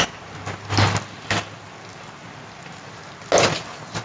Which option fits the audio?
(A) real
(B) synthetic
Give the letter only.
A